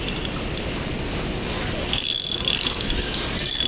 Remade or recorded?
recorded